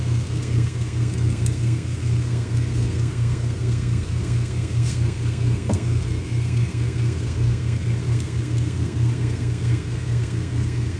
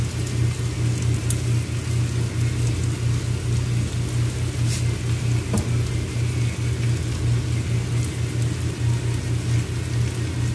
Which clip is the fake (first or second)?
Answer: first